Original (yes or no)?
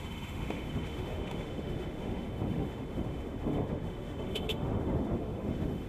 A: no